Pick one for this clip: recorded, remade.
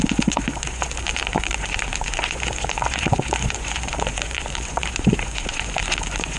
remade